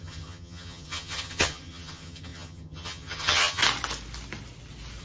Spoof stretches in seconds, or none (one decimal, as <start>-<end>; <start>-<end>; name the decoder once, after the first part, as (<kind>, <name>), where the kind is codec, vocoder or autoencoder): 0.0-3.6 (vocoder, HiFi-GAN)